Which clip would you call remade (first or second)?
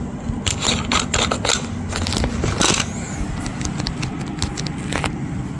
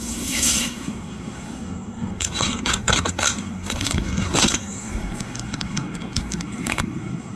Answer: second